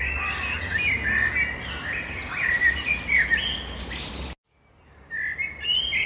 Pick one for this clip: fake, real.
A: real